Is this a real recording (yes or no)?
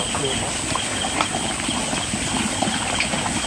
yes